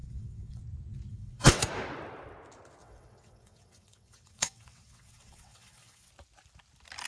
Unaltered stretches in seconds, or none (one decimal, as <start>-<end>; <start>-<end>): 0.6-1.1; 1.6-2.8; 6.1-7.1